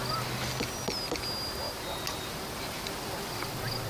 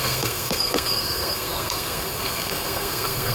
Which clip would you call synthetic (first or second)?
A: second